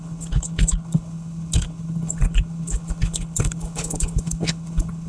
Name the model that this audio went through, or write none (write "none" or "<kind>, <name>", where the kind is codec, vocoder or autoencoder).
codec, HILCodec